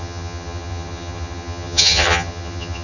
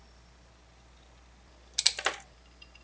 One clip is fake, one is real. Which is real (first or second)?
second